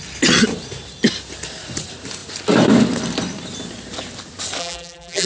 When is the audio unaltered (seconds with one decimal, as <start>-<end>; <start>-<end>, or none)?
0.0-4.6